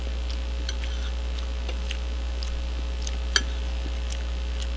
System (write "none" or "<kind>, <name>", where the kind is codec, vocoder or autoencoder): none